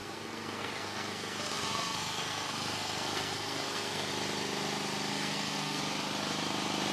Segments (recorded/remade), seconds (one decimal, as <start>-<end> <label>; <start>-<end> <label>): 0.0-4.1 remade; 4.1-5.1 recorded; 5.1-5.8 remade; 5.8-6.9 recorded